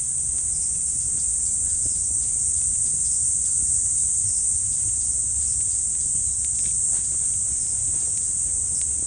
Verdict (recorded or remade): recorded